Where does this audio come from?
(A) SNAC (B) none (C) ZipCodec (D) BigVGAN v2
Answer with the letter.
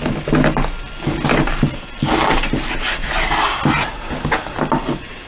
B